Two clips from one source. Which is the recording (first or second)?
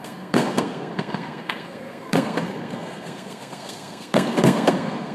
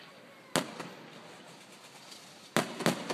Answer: second